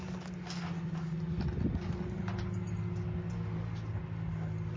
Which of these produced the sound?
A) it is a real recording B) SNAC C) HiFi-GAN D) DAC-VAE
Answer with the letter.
A